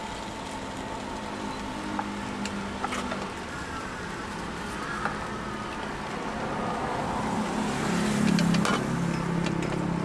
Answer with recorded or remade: recorded